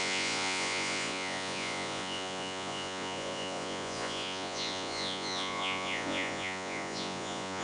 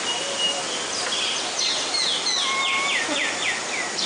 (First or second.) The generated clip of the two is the first